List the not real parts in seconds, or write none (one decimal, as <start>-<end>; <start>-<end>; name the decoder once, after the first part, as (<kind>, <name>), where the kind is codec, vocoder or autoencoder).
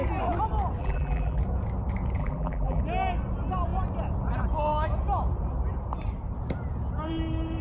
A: 0.8-1.4 (vocoder, BigVGAN v2); 2.2-2.8